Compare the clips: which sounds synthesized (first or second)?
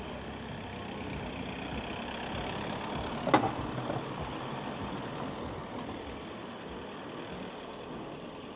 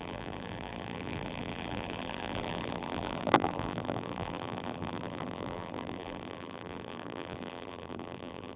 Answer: second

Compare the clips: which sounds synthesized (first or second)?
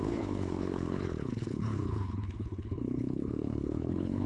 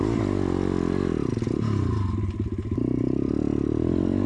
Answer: first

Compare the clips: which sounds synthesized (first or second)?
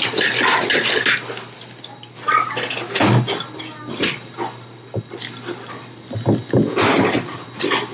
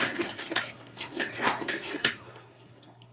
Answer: second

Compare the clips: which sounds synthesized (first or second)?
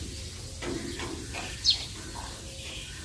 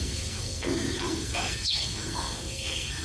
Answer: second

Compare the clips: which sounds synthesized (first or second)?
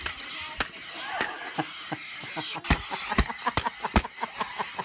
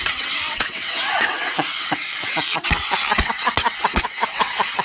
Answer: second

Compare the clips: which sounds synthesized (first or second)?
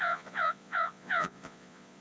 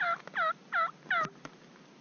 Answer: first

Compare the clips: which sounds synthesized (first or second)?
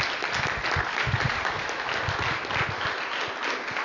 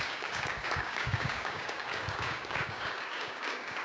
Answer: second